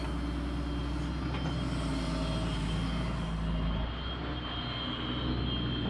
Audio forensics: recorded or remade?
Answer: recorded